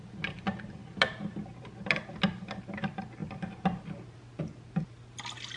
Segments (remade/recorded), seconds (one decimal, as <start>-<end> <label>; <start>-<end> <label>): 0.0-5.6 recorded